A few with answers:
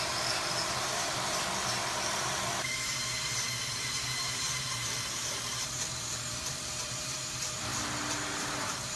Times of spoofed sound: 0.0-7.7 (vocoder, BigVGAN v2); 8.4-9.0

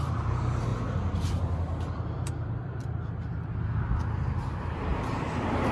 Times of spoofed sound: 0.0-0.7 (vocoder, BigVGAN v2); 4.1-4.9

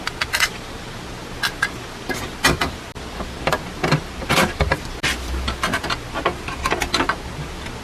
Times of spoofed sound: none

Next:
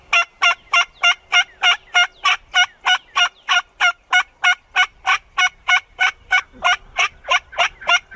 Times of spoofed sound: 5.1-6.4 (vocoder, BigVGAN v2)

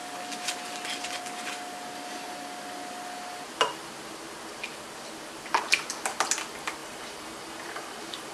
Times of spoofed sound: 6.8-8.3 (vocoder, BigVGAN v2)

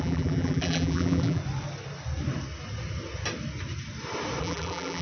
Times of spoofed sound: 0.0-1.4 (vocoder, BigVGAN v2); 4.4-5.0